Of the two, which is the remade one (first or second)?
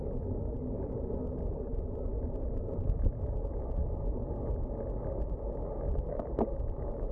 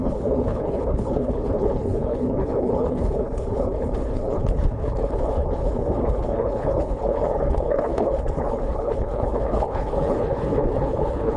second